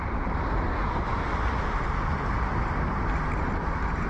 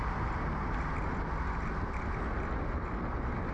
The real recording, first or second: second